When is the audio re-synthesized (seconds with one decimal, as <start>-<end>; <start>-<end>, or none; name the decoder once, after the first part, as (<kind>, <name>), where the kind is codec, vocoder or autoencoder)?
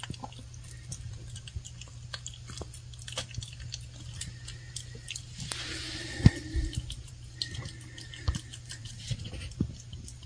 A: 8.8-9.3 (vocoder, WaveNeXt)